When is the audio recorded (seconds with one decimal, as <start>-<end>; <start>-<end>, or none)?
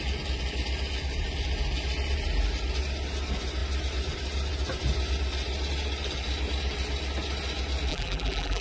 0.0-7.9